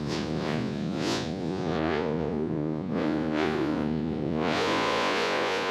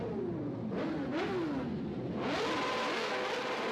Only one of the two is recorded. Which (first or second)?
second